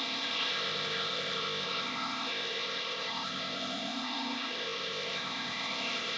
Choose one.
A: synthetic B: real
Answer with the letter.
A